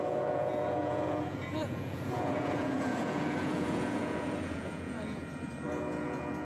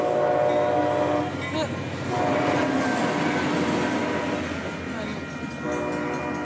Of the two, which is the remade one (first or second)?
first